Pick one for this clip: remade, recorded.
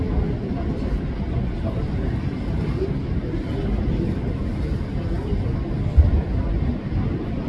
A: recorded